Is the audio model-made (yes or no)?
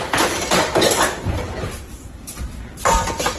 yes